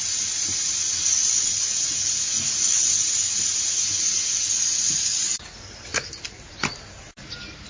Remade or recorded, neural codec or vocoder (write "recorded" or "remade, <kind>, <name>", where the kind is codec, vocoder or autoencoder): recorded